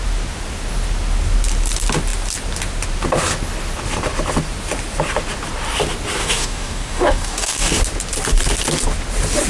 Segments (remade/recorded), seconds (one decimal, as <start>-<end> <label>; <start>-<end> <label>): 0.0-6.2 recorded; 6.2-7.8 remade; 7.8-9.5 recorded